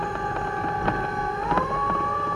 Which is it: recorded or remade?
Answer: recorded